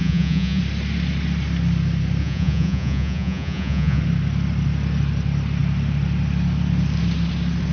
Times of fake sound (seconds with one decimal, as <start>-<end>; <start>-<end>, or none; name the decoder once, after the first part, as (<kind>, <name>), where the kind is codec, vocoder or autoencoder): 0.0-0.6 (vocoder, Vocos); 2.2-4.0